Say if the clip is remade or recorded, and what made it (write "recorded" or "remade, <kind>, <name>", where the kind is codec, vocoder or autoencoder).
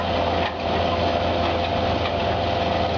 recorded